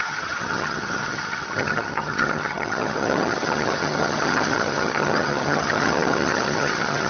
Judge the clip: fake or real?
fake